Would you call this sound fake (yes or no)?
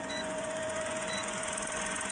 yes